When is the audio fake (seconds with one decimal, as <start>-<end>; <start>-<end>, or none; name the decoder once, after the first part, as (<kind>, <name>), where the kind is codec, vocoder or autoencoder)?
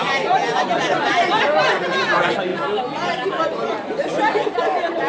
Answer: none